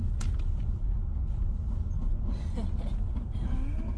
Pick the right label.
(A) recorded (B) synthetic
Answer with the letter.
A